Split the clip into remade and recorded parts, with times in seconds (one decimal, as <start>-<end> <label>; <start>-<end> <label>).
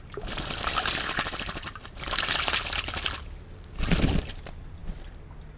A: 0.0-5.6 recorded